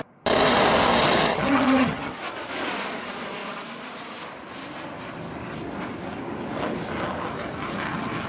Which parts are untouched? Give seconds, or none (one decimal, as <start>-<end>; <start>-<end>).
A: 0.0-1.3; 2.1-8.3